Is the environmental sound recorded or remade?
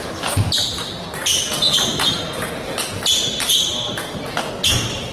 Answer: recorded